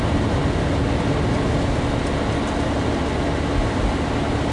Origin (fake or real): real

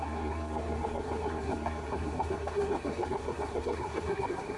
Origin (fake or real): fake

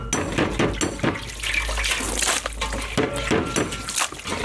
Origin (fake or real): real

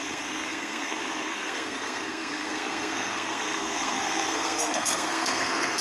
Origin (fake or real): fake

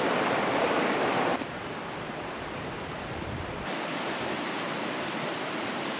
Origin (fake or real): real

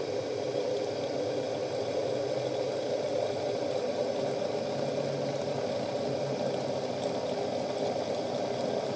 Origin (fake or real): real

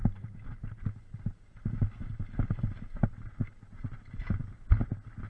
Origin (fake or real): real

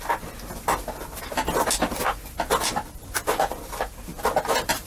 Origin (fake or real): real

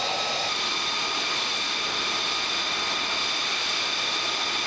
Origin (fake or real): real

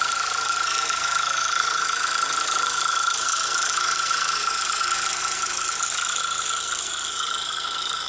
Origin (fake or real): fake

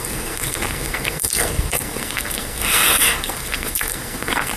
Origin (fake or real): fake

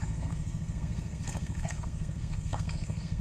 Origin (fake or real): fake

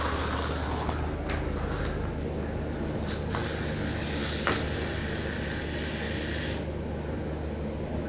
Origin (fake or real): real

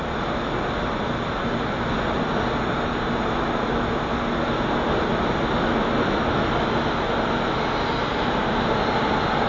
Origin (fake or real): real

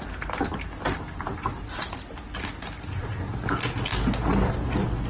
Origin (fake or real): real